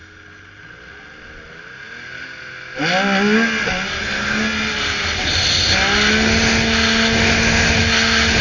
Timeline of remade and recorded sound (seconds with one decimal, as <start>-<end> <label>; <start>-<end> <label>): 0.0-8.4 recorded